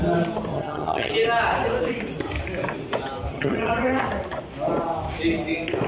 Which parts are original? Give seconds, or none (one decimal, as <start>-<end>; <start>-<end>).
0.0-0.5; 1.1-3.3; 4.0-5.9

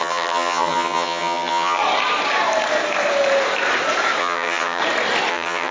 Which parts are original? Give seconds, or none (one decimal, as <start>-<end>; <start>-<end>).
1.8-4.2; 4.8-5.3

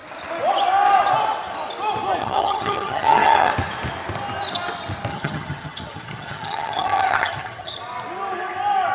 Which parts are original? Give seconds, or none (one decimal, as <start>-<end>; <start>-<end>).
0.0-2.2; 3.5-5.1; 7.8-8.9

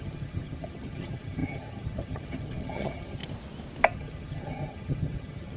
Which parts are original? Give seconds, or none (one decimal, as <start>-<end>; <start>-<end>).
3.2-3.9

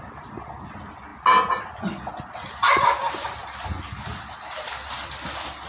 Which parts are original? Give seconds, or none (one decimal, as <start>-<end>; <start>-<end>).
0.0-5.7

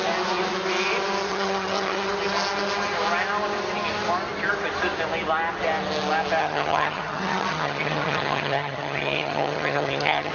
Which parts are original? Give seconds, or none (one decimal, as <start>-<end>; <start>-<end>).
0.0-1.3; 2.1-6.4